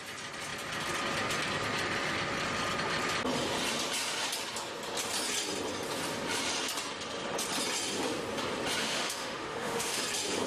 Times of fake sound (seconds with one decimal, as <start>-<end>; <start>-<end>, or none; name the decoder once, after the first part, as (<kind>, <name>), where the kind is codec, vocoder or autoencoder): 8.8-10.0 (autoencoder, DAC-VAE)